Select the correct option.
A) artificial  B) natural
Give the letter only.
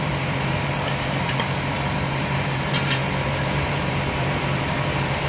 A